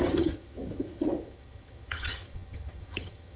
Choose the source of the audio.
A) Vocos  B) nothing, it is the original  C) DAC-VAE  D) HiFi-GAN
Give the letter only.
D